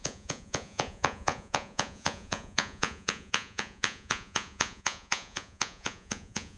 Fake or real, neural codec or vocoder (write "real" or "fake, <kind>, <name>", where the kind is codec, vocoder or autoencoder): fake, vocoder, Vocos